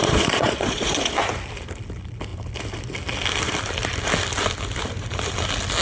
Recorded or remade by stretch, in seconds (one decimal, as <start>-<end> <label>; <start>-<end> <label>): 0.0-1.2 remade; 1.2-5.8 recorded